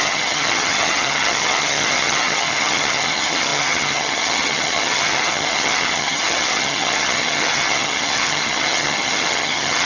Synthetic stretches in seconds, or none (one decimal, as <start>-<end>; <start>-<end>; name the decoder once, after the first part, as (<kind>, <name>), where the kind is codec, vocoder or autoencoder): 0.0-9.9 (vocoder, HiFi-GAN)